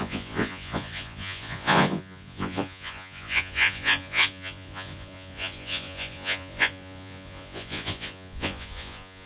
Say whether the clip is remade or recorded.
remade